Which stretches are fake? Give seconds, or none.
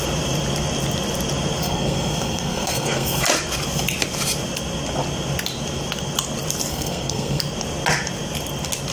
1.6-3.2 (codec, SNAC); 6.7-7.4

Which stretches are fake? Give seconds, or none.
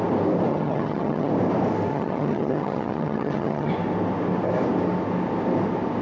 0.5-1.3 (vocoder, HiFi-GAN); 1.9-3.7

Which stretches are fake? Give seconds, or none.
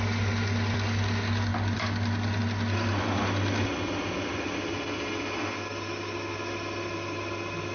1.5-2.4 (vocoder, BigVGAN v2)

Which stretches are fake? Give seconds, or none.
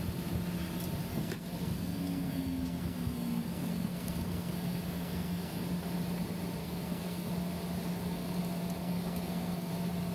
1.1-5.6 (codec, SNAC); 6.6-7.3; 7.9-8.4; 8.8-9.7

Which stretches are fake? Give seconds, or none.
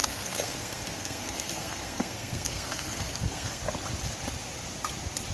0.0-3.6 (codec, SNAC)